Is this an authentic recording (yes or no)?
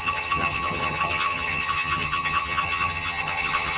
no